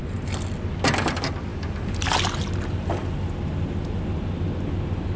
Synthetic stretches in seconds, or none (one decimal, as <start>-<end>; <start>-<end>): none

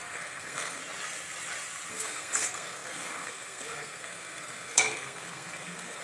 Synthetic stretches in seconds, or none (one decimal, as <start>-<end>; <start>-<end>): 0.0-0.8; 1.9-6.0

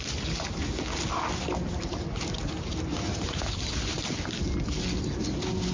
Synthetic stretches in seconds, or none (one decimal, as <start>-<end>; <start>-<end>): 2.9-3.5